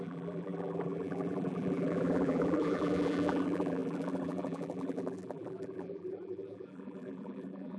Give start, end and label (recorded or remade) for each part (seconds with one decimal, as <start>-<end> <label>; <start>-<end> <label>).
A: 0.0-7.8 remade